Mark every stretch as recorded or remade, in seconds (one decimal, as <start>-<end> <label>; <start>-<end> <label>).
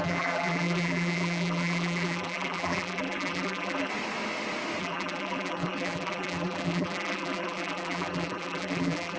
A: 0.0-3.9 remade; 3.9-4.8 recorded; 4.8-9.2 remade